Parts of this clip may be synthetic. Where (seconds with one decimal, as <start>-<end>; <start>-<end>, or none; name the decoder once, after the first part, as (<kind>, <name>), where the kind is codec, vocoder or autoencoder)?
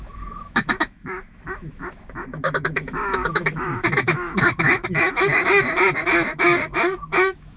0.0-7.6 (autoencoder, DAC-VAE)